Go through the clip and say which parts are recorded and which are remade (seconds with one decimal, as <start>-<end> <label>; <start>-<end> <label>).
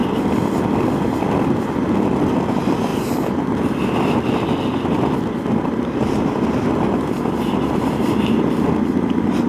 0.0-9.5 recorded